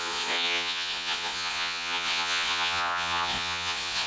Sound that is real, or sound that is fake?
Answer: fake